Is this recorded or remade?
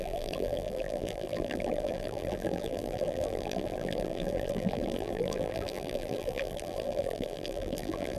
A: remade